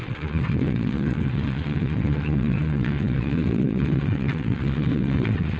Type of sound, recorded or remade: remade